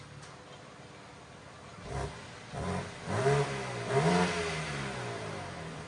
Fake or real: real